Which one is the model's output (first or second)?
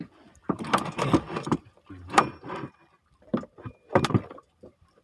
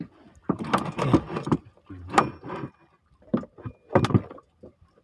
first